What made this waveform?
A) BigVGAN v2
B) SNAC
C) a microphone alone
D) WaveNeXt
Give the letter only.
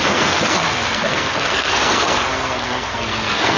B